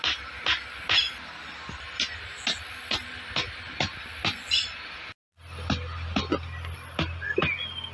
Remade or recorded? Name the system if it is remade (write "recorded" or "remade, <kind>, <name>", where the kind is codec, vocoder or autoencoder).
recorded